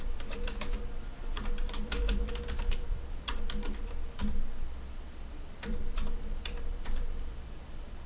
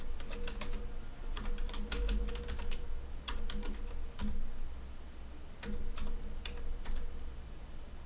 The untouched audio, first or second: second